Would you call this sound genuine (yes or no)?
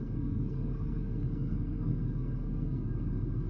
no